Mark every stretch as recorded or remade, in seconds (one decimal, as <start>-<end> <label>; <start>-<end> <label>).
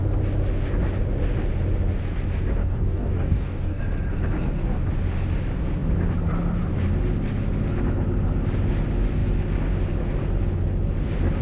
0.0-2.6 recorded; 2.6-3.8 remade; 3.8-11.4 recorded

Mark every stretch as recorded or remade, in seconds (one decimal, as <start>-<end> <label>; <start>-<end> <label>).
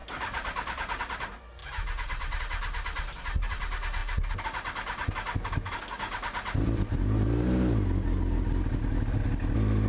0.0-1.0 remade; 1.0-1.6 recorded; 1.6-2.4 remade; 2.4-9.9 recorded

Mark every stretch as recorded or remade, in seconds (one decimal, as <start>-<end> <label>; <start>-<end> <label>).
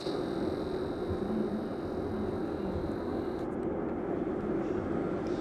0.0-5.4 recorded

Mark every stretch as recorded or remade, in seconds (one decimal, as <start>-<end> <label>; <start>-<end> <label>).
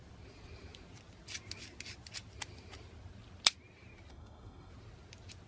0.0-4.1 recorded; 4.1-4.7 remade; 4.7-5.5 recorded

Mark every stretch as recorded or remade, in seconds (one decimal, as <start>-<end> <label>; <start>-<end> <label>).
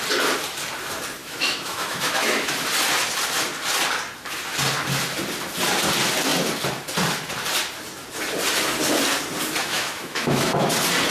0.0-1.2 recorded; 1.2-2.5 remade; 2.5-9.6 recorded; 9.6-10.7 remade; 10.7-11.1 recorded